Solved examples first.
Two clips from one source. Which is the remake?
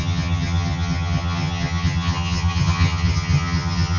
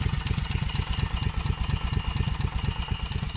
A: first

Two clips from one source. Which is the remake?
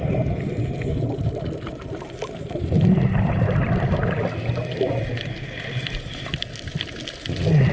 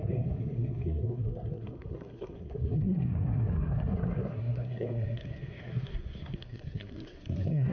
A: second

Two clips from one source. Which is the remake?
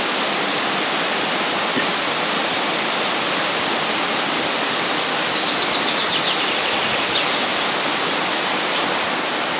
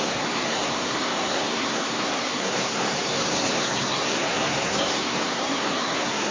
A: second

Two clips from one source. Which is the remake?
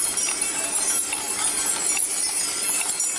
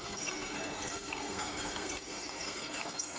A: second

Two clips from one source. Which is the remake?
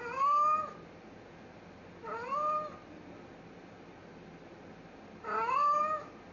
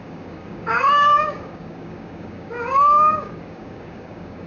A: second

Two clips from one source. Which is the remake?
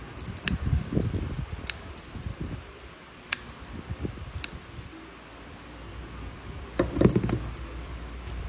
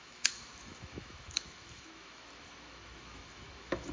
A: second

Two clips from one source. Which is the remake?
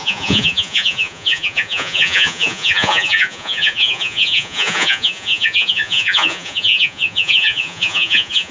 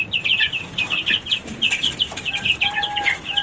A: first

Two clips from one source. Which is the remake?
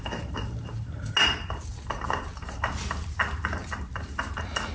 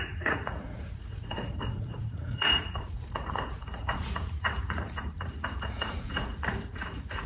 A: second